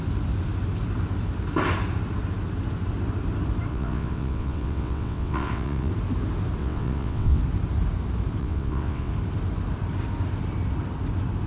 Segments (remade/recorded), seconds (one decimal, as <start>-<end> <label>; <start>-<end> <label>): 0.0-3.7 recorded; 3.7-5.9 remade; 5.9-6.6 recorded; 6.6-7.4 remade; 7.4-8.4 recorded; 8.4-9.1 remade; 9.1-11.5 recorded